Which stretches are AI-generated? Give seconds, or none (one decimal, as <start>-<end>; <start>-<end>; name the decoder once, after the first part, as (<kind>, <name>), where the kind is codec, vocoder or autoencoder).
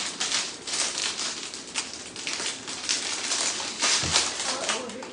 none